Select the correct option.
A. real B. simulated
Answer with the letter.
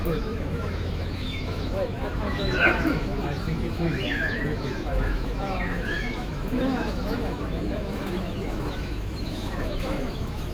B